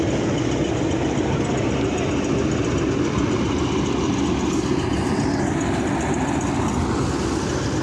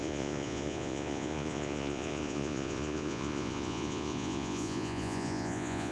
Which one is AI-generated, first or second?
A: second